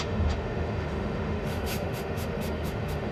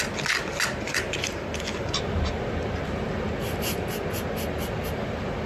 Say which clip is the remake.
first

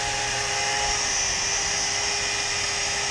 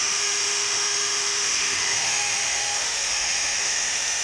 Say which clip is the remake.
second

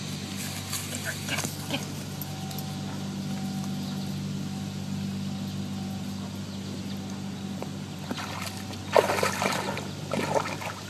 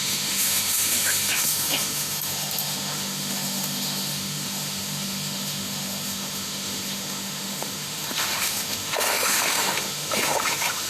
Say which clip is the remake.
second